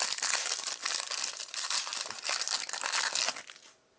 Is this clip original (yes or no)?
yes